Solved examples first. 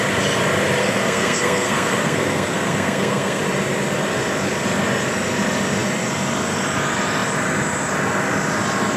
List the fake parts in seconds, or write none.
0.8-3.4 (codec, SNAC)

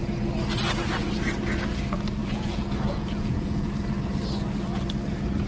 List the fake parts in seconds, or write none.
2.2-3.7 (vocoder, Vocos)

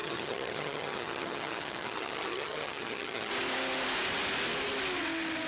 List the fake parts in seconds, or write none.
0.0-3.3 (vocoder, HiFi-GAN)

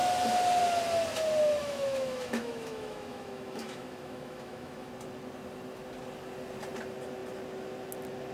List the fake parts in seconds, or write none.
1.6-4.9 (autoencoder, DAC-VAE)

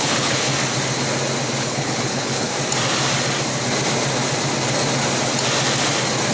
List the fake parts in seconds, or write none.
0.0-0.5 (codec, HILCodec); 1.6-2.5